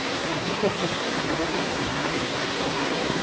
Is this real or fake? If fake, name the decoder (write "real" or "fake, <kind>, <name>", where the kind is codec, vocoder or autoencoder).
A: fake, codec, SNAC